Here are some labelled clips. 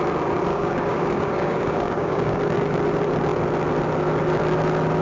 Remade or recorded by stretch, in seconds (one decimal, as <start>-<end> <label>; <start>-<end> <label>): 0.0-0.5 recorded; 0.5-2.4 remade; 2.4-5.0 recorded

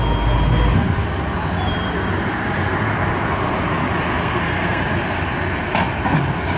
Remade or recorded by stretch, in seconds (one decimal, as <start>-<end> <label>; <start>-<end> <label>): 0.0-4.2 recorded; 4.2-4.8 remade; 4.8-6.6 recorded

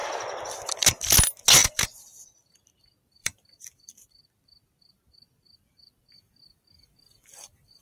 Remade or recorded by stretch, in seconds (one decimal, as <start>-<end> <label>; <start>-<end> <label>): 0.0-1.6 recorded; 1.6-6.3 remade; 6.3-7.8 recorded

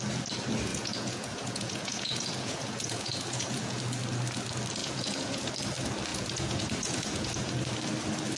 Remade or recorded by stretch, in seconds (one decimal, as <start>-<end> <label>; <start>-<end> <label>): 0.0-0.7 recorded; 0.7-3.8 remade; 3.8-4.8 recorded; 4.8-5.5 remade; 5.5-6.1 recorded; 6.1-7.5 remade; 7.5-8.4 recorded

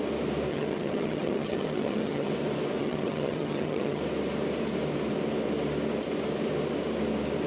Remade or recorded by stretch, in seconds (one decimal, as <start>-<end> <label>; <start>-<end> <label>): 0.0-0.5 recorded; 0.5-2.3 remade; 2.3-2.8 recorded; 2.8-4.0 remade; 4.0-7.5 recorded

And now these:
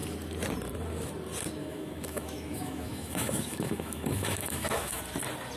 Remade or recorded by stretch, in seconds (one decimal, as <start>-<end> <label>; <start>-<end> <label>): 0.0-1.6 recorded; 1.6-5.0 remade; 5.0-5.6 recorded

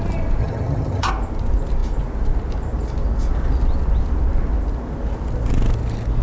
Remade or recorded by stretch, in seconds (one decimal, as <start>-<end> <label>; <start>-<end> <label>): 0.0-0.4 recorded; 0.4-1.1 remade; 1.1-6.2 recorded